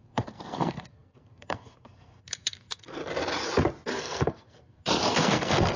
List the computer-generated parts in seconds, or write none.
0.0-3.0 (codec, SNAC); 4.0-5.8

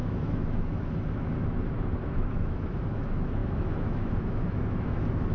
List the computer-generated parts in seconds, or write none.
0.0-5.3 (autoencoder, DAC-VAE)

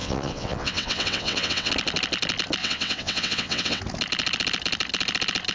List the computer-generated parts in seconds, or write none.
0.0-1.7 (vocoder, WaveNeXt); 2.6-3.8

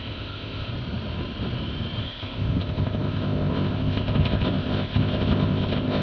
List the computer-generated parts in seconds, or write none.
0.0-0.7 (codec, ZipCodec); 2.0-6.0